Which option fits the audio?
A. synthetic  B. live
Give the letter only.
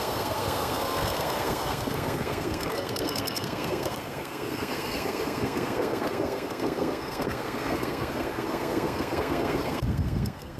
A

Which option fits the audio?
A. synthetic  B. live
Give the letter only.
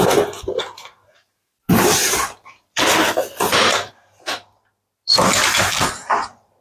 B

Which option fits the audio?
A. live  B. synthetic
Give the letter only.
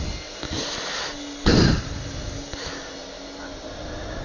A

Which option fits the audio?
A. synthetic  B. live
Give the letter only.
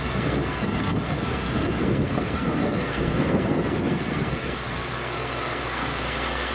A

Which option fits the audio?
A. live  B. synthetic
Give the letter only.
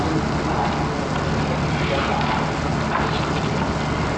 A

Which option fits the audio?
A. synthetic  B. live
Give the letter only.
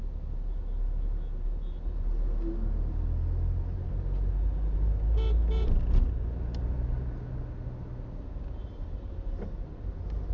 B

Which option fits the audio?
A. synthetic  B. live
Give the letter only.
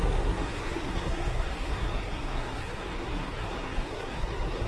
A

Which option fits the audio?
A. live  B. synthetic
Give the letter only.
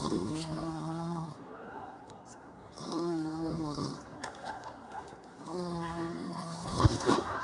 B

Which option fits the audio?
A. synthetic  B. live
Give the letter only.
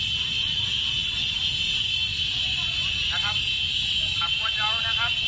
B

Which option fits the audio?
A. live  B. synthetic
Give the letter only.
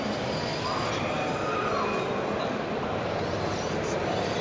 A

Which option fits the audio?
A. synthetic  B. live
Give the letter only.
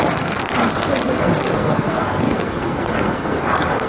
A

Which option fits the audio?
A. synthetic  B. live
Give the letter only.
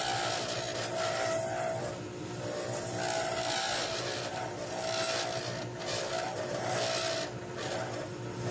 B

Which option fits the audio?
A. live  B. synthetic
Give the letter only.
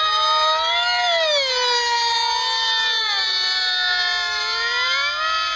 A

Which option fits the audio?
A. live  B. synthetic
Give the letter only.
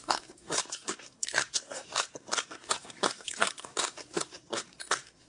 B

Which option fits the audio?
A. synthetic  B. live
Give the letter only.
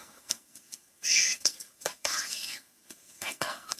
A